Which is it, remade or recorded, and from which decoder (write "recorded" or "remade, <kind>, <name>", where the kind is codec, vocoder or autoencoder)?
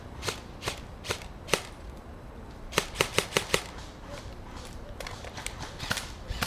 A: remade, vocoder, BigVGAN v2